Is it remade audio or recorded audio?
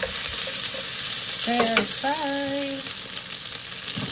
recorded